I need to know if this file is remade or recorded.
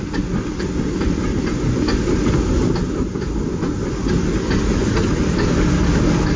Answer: recorded